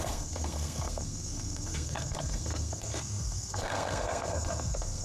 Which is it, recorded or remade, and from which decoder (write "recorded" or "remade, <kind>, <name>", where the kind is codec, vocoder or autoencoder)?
remade, codec, SNAC